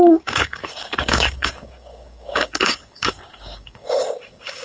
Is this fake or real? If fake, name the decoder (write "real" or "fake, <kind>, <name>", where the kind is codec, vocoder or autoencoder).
fake, codec, DAC